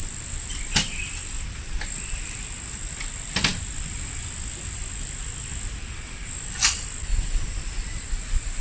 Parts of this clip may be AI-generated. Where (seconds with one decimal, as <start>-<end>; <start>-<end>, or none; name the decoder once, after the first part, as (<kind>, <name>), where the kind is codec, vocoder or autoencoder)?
0.0-2.1 (vocoder, BigVGAN v2); 3.5-4.8; 7.1-8.6